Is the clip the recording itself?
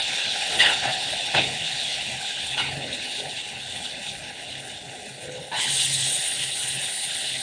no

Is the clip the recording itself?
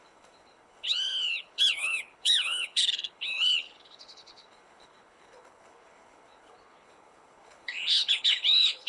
no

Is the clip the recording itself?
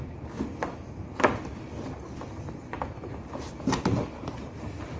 yes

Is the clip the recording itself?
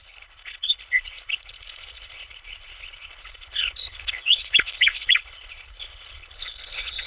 no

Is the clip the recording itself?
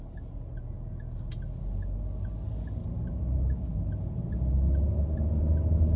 yes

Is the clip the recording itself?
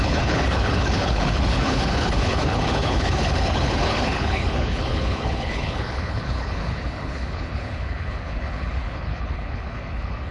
no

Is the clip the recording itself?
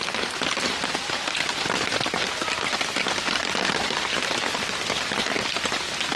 yes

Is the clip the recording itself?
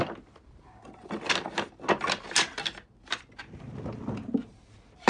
yes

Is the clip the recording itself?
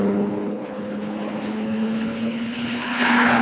no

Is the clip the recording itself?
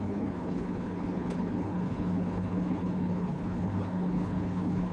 no